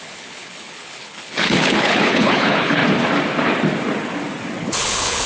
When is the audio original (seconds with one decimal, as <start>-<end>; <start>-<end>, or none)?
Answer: 2.8-4.6